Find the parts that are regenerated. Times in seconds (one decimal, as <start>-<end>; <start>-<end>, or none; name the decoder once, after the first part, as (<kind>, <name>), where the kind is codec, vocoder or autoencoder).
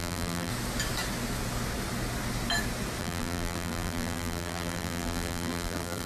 0.0-0.5 (vocoder, BigVGAN v2); 3.0-6.1